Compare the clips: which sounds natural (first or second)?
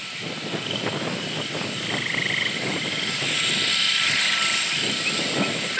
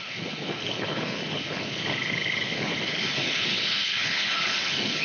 first